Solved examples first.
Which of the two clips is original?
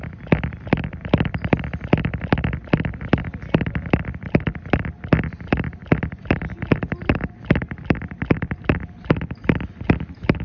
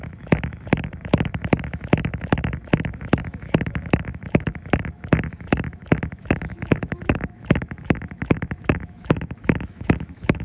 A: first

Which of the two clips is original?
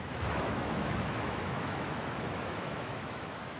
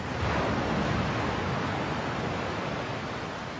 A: second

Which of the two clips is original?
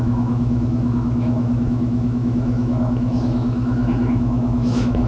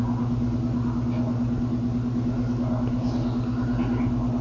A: second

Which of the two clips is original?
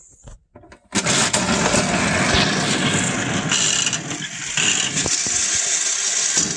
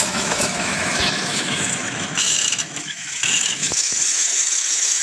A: first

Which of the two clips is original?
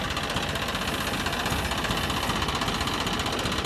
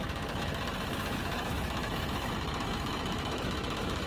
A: first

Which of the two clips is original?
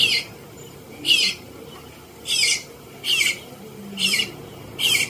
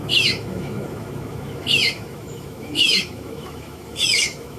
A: first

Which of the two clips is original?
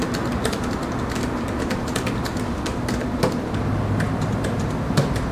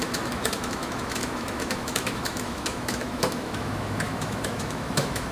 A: first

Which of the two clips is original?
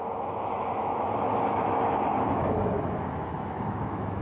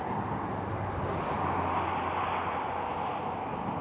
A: second